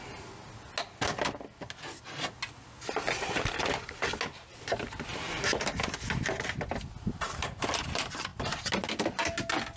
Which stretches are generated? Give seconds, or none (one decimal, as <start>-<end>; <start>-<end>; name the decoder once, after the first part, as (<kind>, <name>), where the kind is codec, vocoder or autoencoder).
none